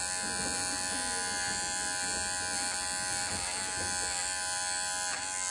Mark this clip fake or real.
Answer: real